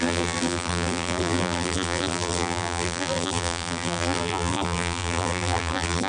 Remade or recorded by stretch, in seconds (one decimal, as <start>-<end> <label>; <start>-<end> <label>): 0.0-6.1 remade